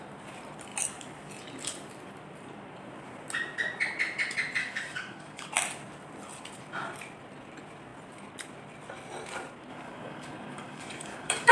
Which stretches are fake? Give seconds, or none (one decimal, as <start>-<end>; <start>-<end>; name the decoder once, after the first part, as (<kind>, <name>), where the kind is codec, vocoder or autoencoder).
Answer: 4.6-5.5 (codec, DAC); 9.7-11.5